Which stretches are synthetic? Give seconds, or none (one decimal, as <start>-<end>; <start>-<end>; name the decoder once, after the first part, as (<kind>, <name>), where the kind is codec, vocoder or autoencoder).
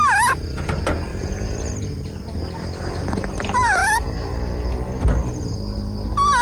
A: 1.1-1.7 (vocoder, BigVGAN v2); 3.8-5.5